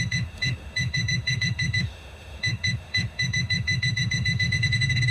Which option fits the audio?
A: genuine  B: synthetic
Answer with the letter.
B